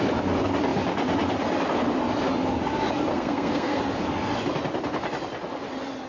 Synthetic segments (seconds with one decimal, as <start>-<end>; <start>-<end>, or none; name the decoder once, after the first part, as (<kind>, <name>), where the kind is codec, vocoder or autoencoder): 3.1-3.8 (codec, SNAC)